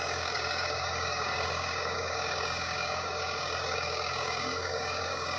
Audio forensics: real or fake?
fake